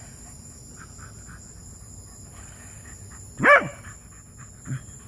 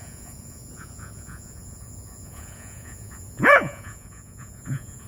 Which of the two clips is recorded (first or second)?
first